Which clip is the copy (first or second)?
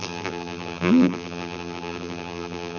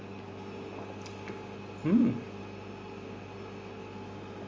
first